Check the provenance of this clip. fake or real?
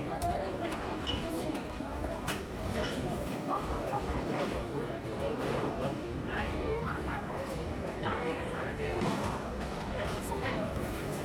fake